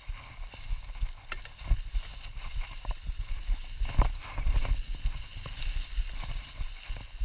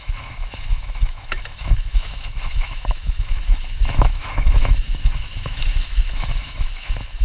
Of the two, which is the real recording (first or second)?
first